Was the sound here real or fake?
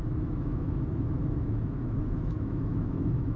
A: fake